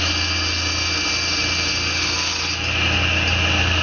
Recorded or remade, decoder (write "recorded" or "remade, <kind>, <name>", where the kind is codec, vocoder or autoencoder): recorded